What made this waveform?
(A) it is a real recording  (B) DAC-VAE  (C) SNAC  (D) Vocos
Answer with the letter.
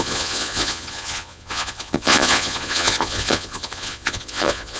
D